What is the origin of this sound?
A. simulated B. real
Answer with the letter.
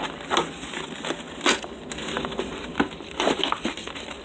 B